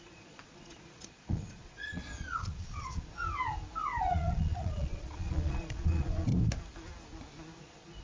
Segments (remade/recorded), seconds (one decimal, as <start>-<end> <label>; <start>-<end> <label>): 0.0-3.2 remade; 3.2-4.0 recorded; 4.0-6.3 remade; 6.3-7.6 recorded; 7.6-8.0 remade